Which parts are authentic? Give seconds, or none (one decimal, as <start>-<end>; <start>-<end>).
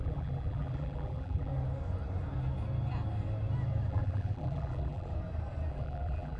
1.5-3.9; 5.1-5.7